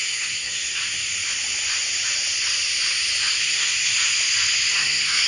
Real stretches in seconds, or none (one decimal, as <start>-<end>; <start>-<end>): 0.8-3.4; 3.9-4.7

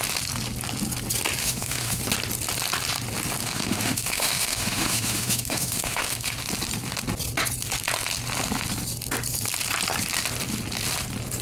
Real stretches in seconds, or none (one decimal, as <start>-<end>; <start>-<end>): 0.0-1.4; 2.0-3.4; 6.3-11.4